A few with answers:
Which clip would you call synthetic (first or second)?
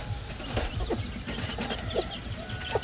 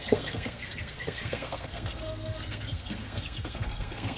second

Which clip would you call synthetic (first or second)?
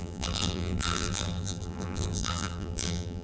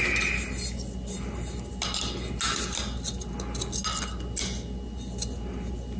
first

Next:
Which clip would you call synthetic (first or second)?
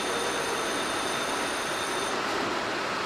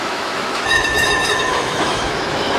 second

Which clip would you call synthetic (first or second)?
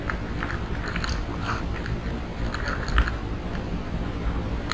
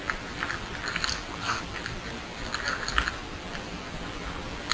second